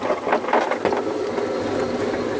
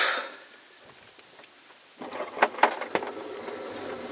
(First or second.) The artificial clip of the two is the second